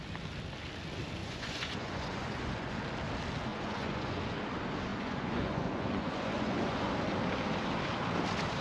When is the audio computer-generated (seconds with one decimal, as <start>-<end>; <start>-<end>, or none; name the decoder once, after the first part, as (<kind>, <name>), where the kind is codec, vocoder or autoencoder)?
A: 1.2-2.8 (vocoder, Vocos); 3.5-4.2; 4.9-6.9

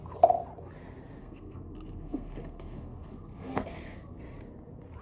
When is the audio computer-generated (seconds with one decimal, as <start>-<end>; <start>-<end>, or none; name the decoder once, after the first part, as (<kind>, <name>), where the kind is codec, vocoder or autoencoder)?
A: 1.2-4.2 (codec, SNAC)

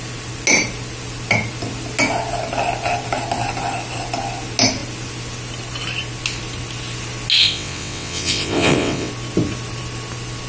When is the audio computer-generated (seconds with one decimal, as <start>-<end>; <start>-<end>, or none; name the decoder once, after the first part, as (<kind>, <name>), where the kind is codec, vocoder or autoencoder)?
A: 7.4-9.1 (vocoder, WaveNeXt)

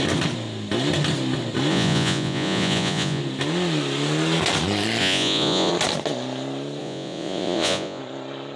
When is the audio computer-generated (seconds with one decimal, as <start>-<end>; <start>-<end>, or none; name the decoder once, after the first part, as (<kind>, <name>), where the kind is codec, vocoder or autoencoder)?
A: 1.7-3.2 (vocoder, Vocos); 5.0-5.7; 6.8-8.0

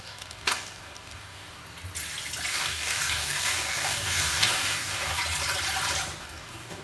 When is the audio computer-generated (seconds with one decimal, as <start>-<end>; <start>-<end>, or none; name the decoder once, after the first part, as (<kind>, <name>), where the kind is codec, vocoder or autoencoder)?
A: 0.0-1.6 (codec, DAC); 2.5-5.2; 6.2-6.8

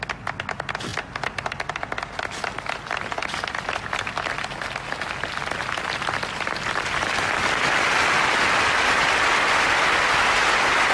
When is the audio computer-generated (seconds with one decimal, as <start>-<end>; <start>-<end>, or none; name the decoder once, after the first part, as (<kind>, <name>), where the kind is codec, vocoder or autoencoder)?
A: 0.9-1.9 (vocoder, BigVGAN v2); 3.2-8.0